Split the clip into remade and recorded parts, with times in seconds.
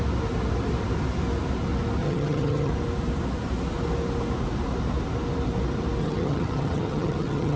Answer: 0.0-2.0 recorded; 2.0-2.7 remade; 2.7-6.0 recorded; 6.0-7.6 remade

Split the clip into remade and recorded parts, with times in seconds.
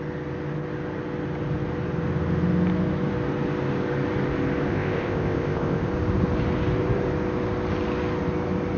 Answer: 0.0-4.7 recorded; 4.7-5.9 remade; 5.9-8.8 recorded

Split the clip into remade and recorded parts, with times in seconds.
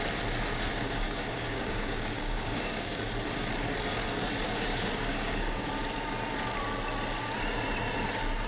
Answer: 0.0-0.7 recorded; 0.7-3.0 remade; 3.0-4.5 recorded; 4.5-5.7 remade; 5.7-8.5 recorded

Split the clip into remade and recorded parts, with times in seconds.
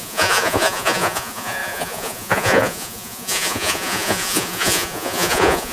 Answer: 0.0-5.7 remade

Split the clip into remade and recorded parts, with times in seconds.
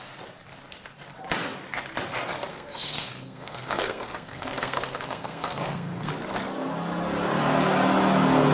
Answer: 0.0-2.5 recorded; 2.5-6.1 remade; 6.1-8.5 recorded